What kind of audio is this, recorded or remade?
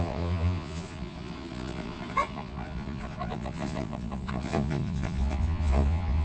remade